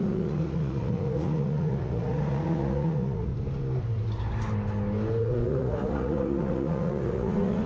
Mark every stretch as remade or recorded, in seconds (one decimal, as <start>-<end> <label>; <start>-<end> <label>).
0.0-3.3 remade; 3.3-5.2 recorded; 5.2-7.7 remade